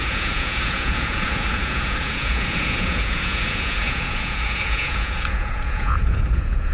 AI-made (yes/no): yes